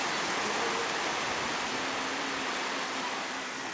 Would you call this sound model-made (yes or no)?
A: no